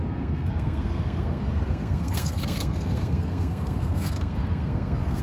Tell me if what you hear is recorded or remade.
remade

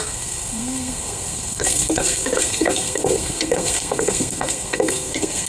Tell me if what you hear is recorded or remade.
remade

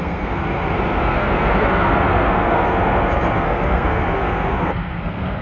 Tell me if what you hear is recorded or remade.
remade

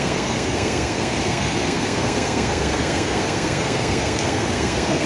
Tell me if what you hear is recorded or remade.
remade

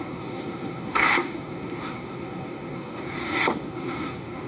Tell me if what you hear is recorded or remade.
remade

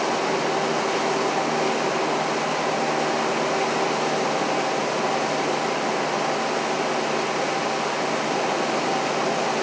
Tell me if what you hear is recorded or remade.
recorded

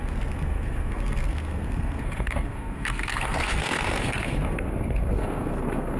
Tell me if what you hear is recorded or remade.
remade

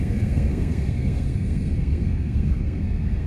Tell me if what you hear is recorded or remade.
remade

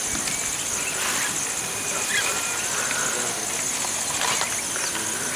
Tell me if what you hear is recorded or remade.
recorded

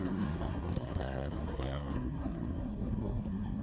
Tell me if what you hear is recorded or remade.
remade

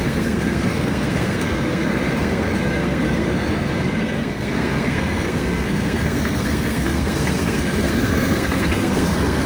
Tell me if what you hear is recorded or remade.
remade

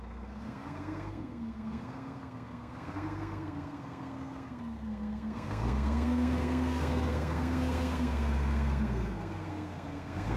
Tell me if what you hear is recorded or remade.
remade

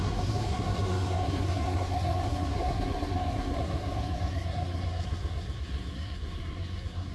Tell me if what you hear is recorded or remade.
remade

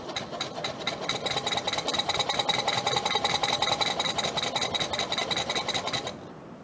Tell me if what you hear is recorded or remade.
recorded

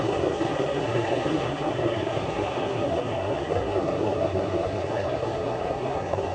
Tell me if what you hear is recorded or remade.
remade